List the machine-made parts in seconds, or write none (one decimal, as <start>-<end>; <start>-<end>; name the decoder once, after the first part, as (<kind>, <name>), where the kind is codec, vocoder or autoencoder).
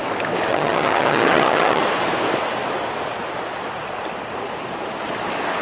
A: 0.5-1.8 (vocoder, HiFi-GAN)